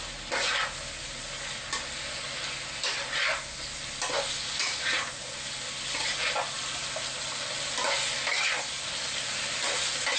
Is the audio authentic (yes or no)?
yes